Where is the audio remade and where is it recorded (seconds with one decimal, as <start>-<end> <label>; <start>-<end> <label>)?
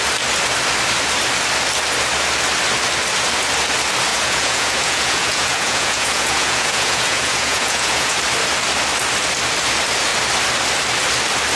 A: 0.0-4.1 recorded; 4.1-8.2 remade; 8.2-11.6 recorded